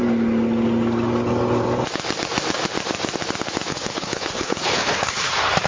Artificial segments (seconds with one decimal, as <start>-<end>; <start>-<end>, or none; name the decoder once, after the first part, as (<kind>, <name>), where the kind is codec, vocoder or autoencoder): 3.7-5.3 (codec, HILCodec)